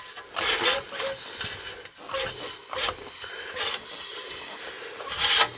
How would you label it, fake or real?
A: real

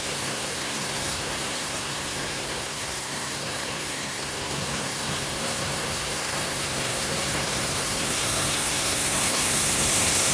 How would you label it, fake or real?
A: fake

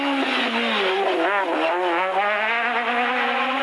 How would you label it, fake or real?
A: real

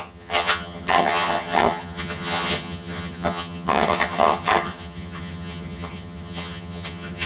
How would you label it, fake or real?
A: fake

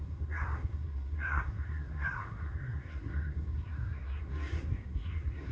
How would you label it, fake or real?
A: fake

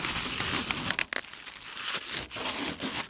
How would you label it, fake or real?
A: real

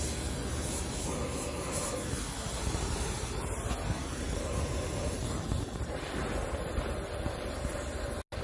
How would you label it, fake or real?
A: real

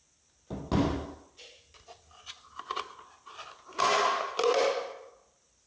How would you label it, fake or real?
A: real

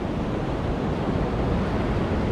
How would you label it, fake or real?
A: real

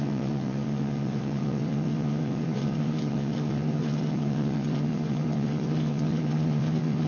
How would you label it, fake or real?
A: fake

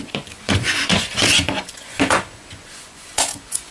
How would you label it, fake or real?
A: fake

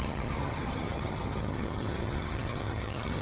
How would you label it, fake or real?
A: fake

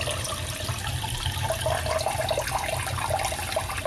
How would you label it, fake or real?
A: real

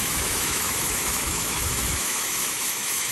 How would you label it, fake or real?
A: fake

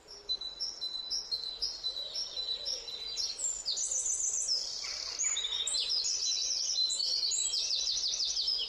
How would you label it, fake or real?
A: real